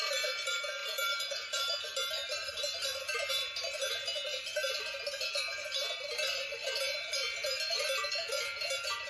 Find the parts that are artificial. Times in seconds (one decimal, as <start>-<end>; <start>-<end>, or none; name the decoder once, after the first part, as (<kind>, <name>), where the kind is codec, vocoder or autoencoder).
0.0-6.6 (vocoder, BigVGAN v2); 8.0-9.1